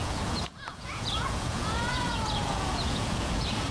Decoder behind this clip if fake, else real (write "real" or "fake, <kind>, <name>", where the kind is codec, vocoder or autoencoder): fake, vocoder, Vocos